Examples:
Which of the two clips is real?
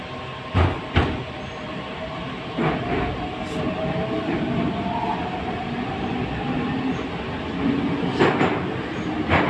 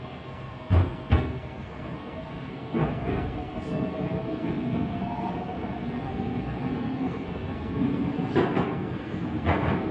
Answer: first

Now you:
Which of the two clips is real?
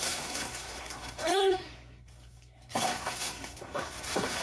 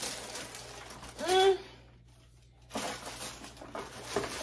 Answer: second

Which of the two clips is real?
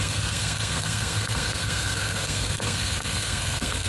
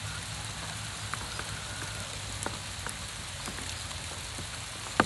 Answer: second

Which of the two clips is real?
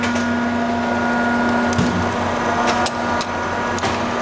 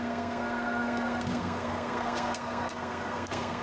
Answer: first